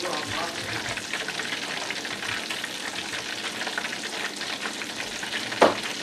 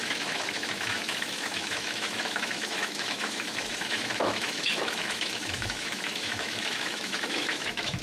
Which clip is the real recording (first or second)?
first